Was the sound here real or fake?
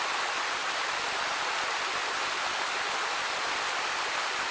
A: real